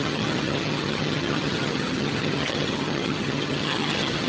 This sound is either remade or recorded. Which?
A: remade